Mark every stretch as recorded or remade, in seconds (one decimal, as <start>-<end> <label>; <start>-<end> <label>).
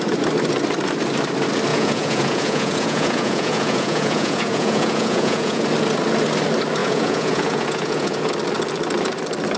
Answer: 0.0-1.7 recorded; 1.7-5.6 remade; 5.6-6.8 recorded; 6.8-8.3 remade; 8.3-9.6 recorded